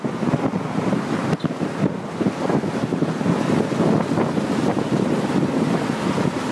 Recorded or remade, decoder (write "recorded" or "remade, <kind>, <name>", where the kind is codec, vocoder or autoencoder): recorded